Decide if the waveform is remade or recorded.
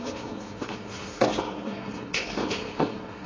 remade